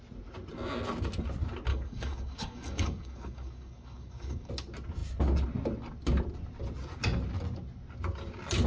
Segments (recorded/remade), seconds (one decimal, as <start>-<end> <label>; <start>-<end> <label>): 0.0-1.7 recorded; 1.7-4.5 remade; 4.5-8.7 recorded